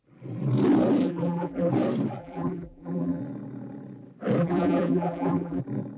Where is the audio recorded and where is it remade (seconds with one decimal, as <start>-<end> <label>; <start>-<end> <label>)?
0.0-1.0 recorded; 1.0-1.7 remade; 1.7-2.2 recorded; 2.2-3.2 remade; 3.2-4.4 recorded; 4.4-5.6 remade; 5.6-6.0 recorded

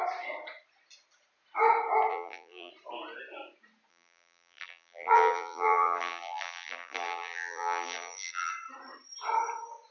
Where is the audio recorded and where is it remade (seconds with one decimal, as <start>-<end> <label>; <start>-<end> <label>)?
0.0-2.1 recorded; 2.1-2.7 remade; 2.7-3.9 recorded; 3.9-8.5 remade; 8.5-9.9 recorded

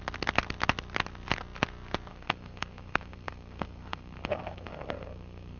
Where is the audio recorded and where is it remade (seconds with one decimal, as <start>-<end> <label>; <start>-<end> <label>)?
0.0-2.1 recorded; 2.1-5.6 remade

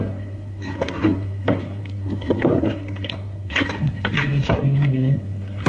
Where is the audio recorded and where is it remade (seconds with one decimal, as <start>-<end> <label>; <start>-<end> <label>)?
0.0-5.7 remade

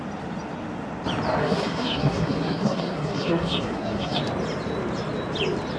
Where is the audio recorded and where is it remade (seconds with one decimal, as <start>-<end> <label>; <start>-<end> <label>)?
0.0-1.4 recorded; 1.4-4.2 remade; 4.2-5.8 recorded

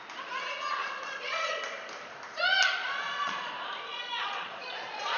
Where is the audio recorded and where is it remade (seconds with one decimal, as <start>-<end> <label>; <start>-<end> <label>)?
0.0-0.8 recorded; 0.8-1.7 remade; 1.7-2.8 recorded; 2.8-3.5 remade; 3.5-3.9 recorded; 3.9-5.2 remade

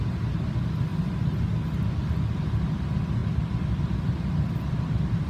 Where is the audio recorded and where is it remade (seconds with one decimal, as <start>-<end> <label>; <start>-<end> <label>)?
0.0-5.3 recorded

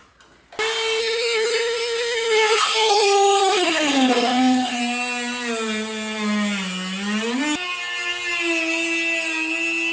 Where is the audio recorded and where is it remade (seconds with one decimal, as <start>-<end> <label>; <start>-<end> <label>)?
0.0-1.0 recorded; 1.0-4.8 remade; 4.8-9.9 recorded